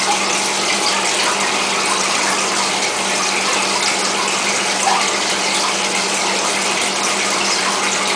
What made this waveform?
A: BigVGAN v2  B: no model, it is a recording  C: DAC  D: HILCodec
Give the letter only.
B